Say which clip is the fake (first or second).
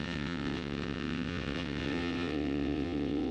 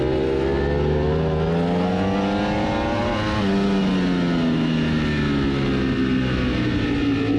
first